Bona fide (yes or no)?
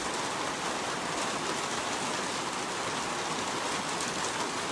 yes